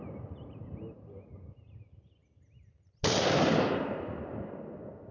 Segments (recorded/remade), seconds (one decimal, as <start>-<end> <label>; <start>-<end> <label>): 0.0-5.1 recorded